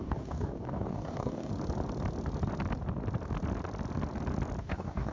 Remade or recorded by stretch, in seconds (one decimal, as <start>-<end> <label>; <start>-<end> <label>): 0.0-1.5 remade; 1.5-4.6 recorded; 4.6-5.1 remade